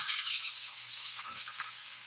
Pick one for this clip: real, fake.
fake